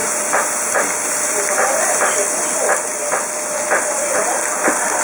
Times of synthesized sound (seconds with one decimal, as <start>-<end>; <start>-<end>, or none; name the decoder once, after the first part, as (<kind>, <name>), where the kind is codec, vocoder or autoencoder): none